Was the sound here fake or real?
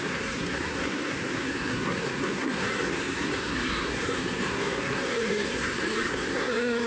fake